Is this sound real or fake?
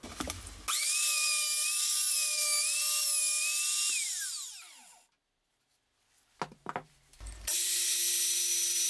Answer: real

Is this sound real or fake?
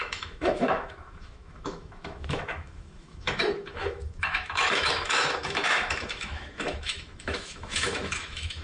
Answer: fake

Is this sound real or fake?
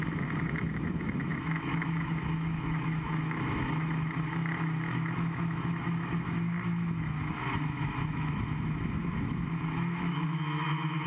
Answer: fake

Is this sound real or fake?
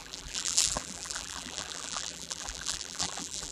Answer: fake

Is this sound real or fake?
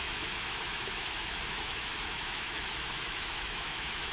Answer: fake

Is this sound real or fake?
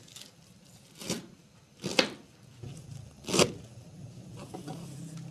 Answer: real